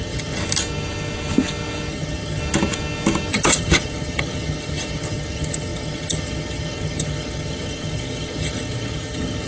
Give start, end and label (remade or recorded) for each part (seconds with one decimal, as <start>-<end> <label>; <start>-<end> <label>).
0.0-0.4 remade; 0.4-1.9 recorded; 1.9-2.4 remade; 2.4-3.3 recorded; 3.3-9.5 remade